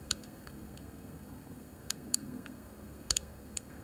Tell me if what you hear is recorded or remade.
remade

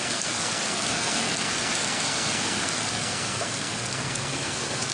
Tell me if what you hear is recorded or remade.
remade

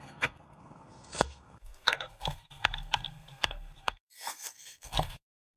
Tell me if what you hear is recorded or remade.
remade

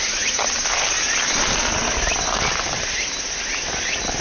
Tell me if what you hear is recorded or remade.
recorded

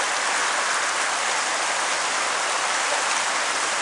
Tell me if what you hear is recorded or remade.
recorded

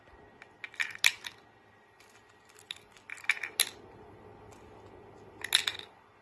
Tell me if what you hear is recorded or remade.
recorded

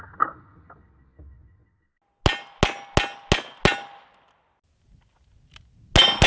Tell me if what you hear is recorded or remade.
recorded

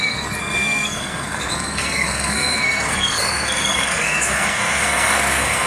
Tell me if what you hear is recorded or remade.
remade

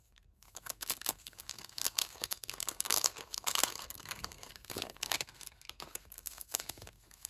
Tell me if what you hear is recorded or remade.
remade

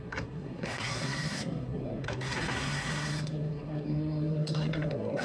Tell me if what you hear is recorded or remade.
remade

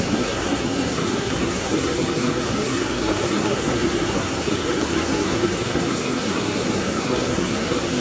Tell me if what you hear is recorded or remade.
remade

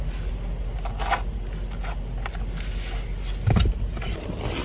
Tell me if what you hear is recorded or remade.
recorded